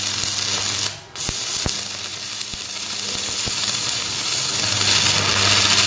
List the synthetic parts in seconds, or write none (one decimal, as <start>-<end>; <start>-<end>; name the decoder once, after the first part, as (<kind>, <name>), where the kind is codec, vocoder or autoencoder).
2.1-2.8 (vocoder, BigVGAN v2); 3.6-4.1